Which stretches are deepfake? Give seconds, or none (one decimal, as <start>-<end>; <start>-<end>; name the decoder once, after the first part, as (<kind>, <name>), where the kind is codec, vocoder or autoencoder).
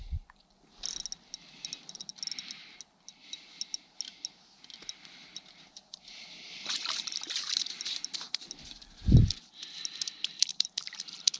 5.2-8.4 (vocoder, BigVGAN v2); 10.5-11.0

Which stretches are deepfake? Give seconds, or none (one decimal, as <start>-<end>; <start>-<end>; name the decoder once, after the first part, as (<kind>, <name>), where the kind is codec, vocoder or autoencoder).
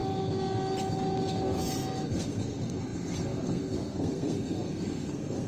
1.4-5.5 (codec, SNAC)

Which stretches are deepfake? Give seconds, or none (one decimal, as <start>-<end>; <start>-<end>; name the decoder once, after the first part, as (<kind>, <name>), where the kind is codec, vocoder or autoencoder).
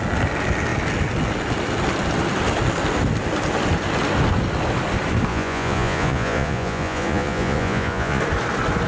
5.3-8.2 (vocoder, Vocos)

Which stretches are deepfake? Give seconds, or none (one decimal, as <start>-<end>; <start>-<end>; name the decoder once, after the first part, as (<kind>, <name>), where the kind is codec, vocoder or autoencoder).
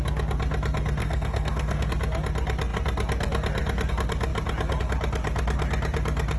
1.0-1.9 (codec, SNAC)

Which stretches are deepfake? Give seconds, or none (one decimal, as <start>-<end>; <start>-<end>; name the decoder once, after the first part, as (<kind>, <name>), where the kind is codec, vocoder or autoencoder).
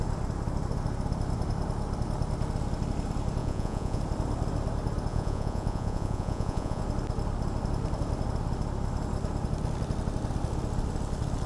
3.4-4.0 (vocoder, Vocos); 5.1-6.8